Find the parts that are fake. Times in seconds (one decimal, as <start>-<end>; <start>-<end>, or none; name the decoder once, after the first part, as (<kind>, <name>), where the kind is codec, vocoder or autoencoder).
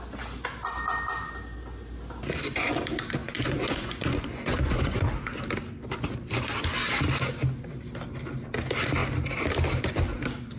3.2-5.1 (vocoder, Vocos)